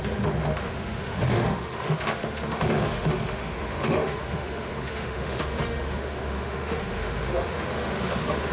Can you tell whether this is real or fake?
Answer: fake